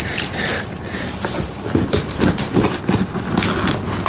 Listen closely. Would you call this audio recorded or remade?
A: recorded